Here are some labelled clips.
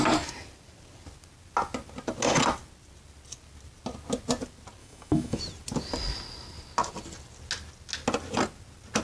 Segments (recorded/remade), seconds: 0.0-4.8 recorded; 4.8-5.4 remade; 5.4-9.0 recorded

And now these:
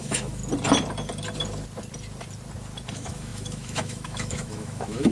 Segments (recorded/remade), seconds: 0.0-0.4 remade; 0.4-2.9 recorded; 2.9-5.1 remade